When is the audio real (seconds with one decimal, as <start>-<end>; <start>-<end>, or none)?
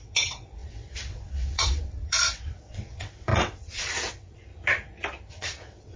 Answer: 4.5-5.3